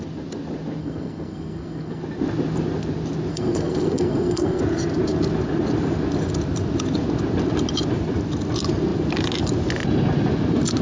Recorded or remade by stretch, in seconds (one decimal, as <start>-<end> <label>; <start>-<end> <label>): 0.0-0.8 recorded; 0.8-2.0 remade; 2.0-3.3 recorded; 3.3-4.6 remade; 4.6-10.8 recorded